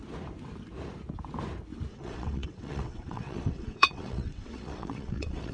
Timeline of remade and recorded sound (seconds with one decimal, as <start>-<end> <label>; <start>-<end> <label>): 0.0-1.9 recorded; 1.9-5.5 remade